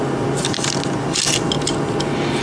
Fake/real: real